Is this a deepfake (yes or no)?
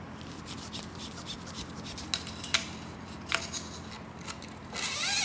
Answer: no